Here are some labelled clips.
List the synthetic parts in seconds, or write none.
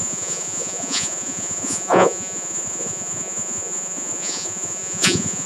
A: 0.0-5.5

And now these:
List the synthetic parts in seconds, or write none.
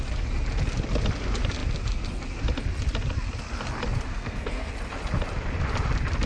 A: 4.1-4.7